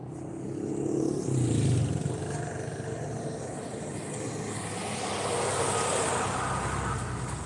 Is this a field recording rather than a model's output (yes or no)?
yes